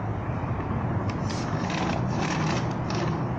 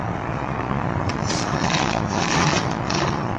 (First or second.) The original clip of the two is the first